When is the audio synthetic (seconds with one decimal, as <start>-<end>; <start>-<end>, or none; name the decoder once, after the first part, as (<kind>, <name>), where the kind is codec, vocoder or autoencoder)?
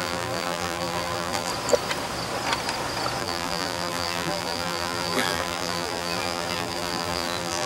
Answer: 0.0-1.5 (vocoder, BigVGAN v2); 3.2-7.7